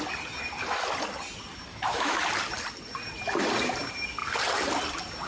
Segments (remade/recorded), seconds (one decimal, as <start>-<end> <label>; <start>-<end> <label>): 0.0-1.7 recorded; 1.7-2.2 remade; 2.2-5.3 recorded